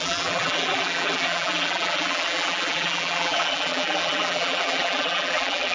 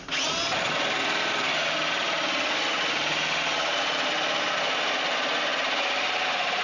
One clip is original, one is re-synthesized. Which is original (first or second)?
second